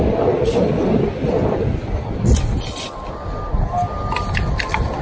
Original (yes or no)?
yes